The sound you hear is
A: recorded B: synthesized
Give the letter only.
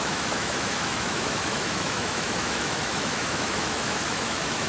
B